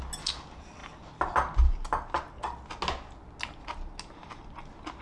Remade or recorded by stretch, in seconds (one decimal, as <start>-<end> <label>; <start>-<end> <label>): 0.0-5.0 recorded